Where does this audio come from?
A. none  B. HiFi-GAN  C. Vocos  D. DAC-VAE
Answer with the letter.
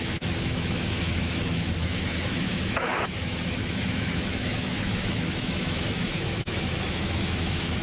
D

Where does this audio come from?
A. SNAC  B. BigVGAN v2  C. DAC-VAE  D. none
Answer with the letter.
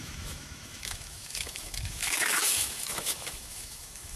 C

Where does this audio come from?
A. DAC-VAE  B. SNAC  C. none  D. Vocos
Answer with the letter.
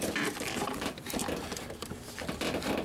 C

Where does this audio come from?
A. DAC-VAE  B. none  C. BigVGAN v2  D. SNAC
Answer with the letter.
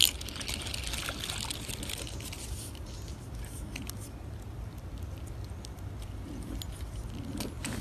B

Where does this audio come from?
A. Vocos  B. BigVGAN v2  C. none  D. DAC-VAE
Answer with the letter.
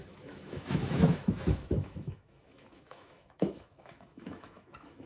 D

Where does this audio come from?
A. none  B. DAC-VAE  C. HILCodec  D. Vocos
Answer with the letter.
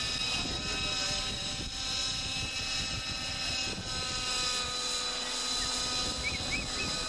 A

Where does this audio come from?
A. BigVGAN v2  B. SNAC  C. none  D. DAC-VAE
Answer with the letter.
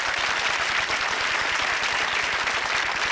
C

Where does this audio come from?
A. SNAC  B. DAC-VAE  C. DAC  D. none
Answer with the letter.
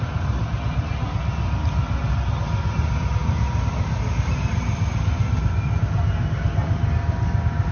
D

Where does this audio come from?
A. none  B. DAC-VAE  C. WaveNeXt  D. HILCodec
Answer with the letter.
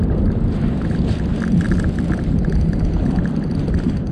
A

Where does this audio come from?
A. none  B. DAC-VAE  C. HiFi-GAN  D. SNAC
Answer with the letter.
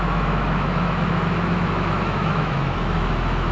B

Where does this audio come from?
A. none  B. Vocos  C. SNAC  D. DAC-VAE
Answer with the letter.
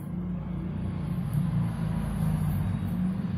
A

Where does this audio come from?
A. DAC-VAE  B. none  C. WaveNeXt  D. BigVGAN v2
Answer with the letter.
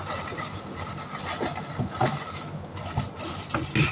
B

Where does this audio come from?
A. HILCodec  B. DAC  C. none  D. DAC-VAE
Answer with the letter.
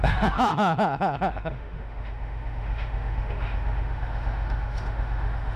D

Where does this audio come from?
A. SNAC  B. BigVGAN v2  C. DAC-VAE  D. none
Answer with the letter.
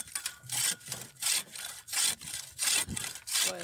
D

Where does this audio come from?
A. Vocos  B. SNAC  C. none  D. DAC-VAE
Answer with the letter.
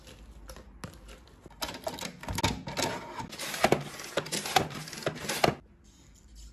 C